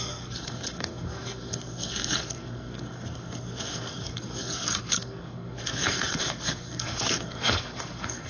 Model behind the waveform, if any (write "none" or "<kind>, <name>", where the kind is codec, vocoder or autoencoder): codec, SNAC